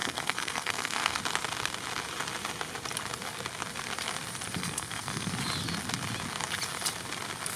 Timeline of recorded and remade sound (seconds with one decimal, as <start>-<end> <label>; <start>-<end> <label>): 0.0-1.2 remade; 1.2-4.6 recorded; 4.6-5.3 remade; 5.3-7.6 recorded